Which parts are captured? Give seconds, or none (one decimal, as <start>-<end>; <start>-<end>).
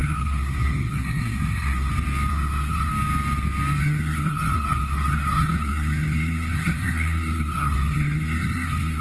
1.9-2.3; 2.9-3.8